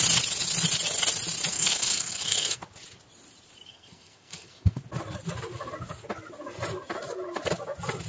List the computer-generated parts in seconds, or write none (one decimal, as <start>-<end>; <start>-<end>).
1.5-2.6; 3.7-4.8